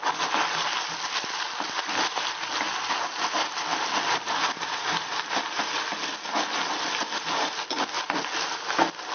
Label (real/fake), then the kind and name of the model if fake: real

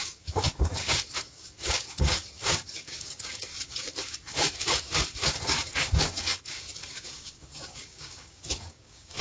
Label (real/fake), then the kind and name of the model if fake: fake, codec, DAC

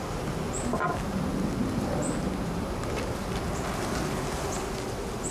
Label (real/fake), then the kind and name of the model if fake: real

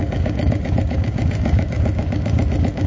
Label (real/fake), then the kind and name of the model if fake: fake, codec, DAC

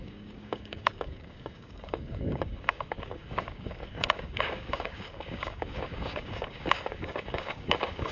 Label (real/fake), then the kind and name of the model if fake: fake, codec, DAC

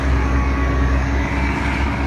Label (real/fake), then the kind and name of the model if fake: fake, codec, DAC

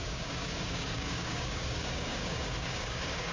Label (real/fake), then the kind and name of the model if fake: fake, codec, DAC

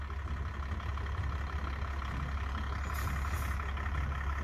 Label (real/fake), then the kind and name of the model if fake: real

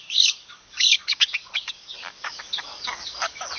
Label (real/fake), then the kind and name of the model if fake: fake, codec, DAC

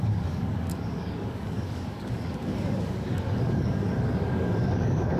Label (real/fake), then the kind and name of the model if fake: fake, codec, DAC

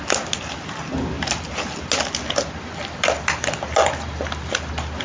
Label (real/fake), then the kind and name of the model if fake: real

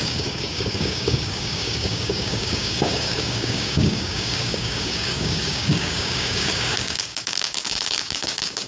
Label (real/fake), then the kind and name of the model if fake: fake, codec, DAC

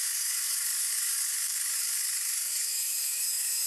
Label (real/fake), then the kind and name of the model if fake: fake, codec, DAC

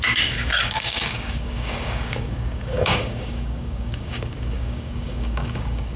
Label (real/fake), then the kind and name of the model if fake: fake, codec, DAC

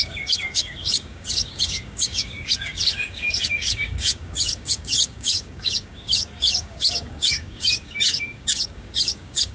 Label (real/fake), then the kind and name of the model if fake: fake, codec, DAC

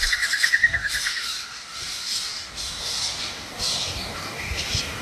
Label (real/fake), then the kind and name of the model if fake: fake, codec, DAC